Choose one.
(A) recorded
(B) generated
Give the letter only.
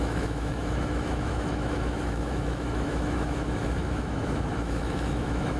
B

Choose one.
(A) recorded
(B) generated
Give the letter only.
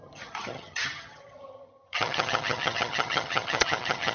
B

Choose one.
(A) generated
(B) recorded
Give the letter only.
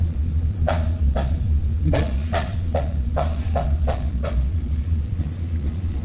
A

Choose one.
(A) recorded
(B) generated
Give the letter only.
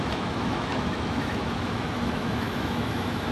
B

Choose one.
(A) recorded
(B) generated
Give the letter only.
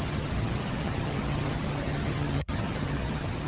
B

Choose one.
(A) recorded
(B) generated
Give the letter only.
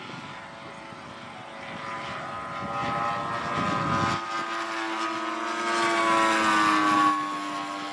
A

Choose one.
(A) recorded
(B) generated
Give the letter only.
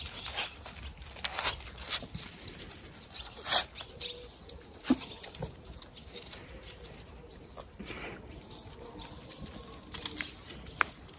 A